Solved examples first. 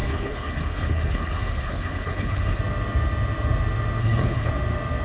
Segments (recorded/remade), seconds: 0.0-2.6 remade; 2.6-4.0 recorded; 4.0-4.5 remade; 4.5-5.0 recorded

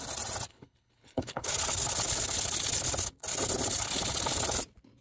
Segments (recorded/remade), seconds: 0.0-0.5 recorded; 0.5-1.5 remade; 1.5-5.0 recorded

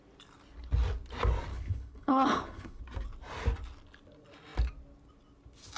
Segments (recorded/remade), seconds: 0.0-1.5 recorded; 1.5-2.8 remade; 2.8-5.8 recorded